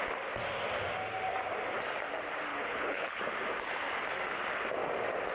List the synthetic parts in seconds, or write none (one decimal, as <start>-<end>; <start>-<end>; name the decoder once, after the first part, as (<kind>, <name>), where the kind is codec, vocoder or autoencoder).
2.5-3.2 (codec, HILCodec)